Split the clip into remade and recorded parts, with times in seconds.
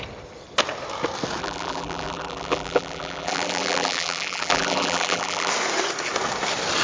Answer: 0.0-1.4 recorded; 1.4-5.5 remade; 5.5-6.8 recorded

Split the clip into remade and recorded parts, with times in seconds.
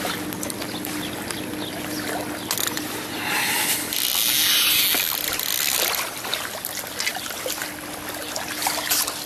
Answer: 0.0-9.3 recorded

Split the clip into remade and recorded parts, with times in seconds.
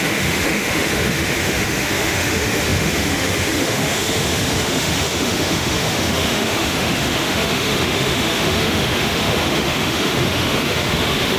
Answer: 0.0-11.4 remade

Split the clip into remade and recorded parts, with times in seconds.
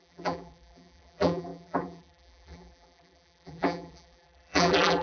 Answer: 0.0-5.0 remade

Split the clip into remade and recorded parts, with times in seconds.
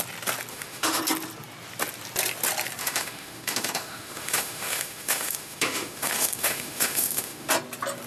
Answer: 0.0-0.5 recorded; 0.5-1.0 remade; 1.0-2.8 recorded; 2.8-7.5 remade; 7.5-8.1 recorded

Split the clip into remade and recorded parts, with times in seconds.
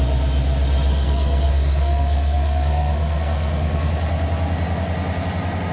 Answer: 0.0-0.9 recorded; 0.9-3.9 remade; 3.9-5.7 recorded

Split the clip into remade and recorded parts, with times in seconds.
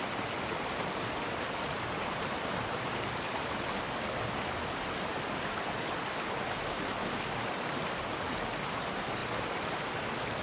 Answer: 0.0-10.4 recorded